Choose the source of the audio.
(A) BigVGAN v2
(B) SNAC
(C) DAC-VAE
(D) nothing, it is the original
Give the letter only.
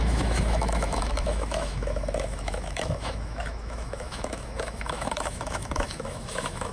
C